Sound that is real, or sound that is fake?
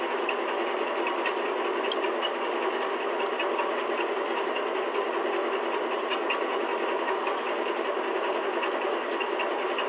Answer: real